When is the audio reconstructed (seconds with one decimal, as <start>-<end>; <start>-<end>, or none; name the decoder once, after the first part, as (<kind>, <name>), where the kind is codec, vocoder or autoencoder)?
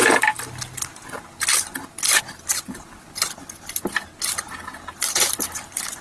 none